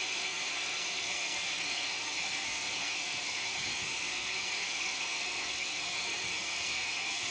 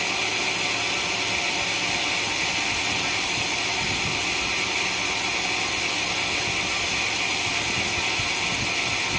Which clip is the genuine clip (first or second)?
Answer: second